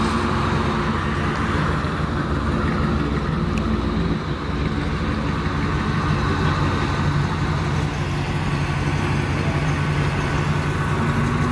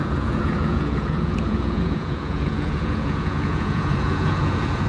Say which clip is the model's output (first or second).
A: second